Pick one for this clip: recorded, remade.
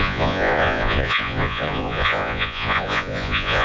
remade